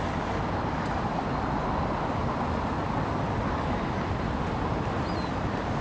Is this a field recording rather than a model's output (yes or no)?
yes